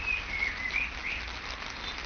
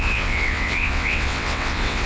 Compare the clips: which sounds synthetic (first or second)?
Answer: second